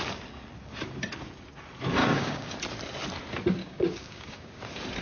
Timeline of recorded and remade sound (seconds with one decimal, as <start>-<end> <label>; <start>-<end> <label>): 0.0-2.0 recorded; 2.0-2.5 remade; 2.5-3.6 recorded; 3.6-4.6 remade; 4.6-5.0 recorded